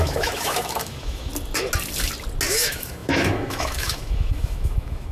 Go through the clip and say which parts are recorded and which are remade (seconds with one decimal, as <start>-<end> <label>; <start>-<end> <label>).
0.0-1.3 remade; 1.3-2.5 recorded; 2.5-5.1 remade